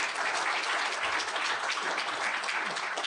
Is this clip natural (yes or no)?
yes